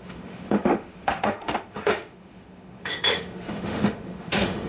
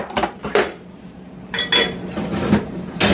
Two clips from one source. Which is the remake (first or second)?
first